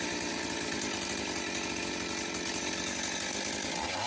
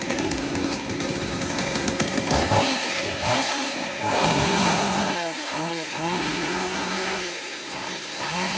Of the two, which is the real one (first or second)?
first